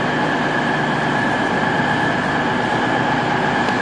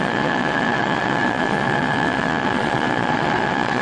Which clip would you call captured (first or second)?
first